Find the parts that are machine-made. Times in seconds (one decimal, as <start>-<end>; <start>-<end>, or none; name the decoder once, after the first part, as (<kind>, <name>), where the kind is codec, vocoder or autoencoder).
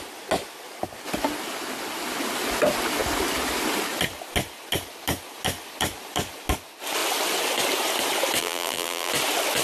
8.4-9.1 (vocoder, BigVGAN v2)